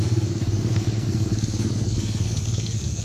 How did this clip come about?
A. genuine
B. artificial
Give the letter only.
B